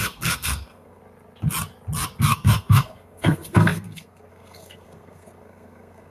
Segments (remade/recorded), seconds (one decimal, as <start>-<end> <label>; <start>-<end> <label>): 0.0-1.0 remade; 1.0-2.2 recorded; 2.2-6.1 remade